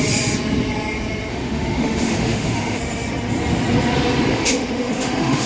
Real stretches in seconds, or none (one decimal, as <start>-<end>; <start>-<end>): 0.0-1.3; 2.8-4.3